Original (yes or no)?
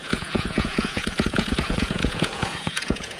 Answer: no